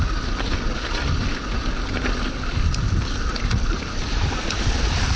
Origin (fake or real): real